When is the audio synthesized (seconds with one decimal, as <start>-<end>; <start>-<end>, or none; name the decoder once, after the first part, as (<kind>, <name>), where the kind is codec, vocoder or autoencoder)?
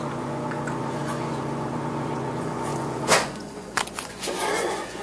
0.0-5.0 (vocoder, Vocos)